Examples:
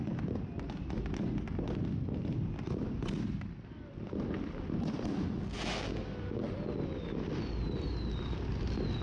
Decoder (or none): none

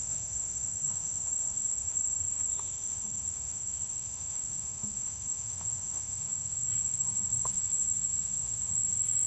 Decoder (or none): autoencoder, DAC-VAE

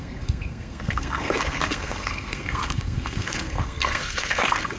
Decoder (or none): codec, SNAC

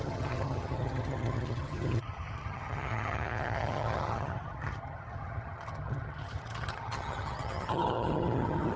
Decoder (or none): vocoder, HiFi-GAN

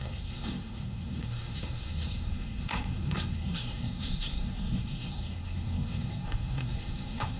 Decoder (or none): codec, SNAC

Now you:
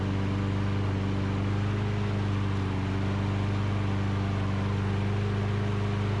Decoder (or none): none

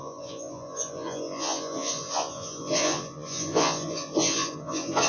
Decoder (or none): vocoder, Vocos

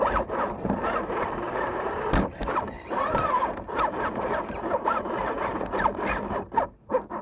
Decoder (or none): vocoder, BigVGAN v2